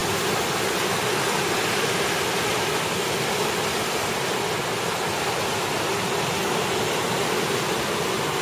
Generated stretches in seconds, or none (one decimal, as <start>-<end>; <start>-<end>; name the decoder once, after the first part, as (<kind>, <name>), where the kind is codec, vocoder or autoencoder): none